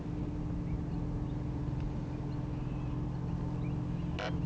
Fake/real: real